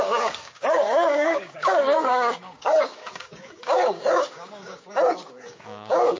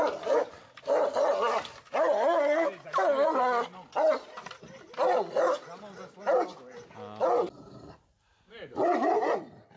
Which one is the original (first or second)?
second